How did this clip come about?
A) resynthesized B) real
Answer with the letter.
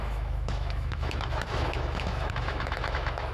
A